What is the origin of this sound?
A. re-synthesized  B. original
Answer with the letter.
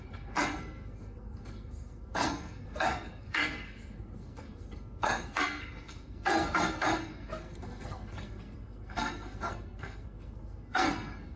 A